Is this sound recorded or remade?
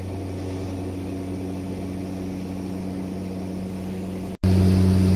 recorded